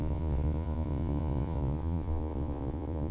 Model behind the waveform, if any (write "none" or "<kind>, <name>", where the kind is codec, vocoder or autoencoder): vocoder, Vocos